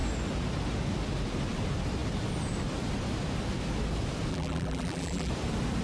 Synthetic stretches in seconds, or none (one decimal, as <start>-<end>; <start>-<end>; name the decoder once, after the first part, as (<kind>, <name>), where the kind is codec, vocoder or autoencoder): 4.3-5.3 (vocoder, BigVGAN v2)